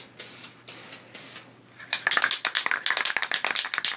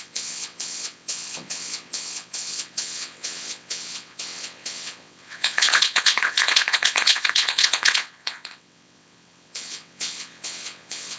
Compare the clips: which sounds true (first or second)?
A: first